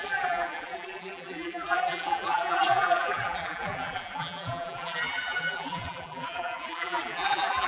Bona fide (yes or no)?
no